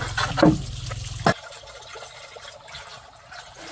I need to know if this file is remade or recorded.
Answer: recorded